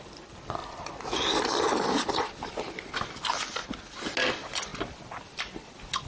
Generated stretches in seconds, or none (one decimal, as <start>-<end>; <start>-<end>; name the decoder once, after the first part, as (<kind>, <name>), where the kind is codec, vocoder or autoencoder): none